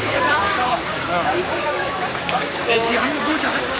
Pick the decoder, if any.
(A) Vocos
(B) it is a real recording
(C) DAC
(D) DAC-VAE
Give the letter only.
C